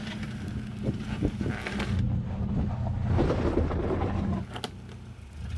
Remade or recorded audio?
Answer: recorded